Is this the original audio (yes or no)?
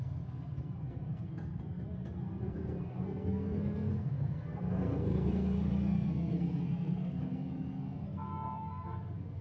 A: no